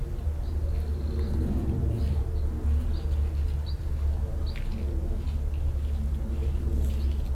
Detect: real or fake real